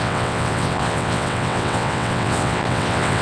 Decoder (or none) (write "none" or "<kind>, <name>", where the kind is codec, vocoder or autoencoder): vocoder, WaveNeXt